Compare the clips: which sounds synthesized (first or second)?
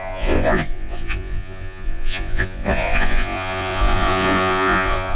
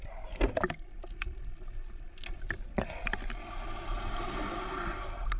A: first